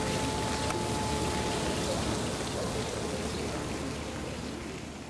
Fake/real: real